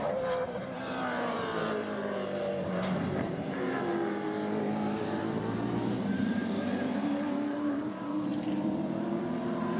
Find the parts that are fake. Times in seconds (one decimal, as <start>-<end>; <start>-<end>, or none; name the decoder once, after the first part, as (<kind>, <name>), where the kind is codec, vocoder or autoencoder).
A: 0.0-3.9 (vocoder, BigVGAN v2); 4.6-9.8